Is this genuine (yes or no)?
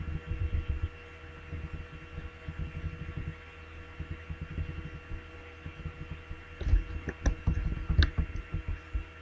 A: yes